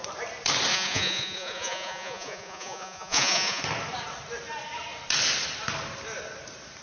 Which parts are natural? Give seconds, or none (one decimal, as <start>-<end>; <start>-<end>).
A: 0.0-0.7; 3.6-6.8